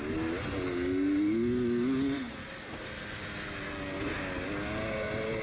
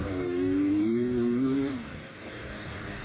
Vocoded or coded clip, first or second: second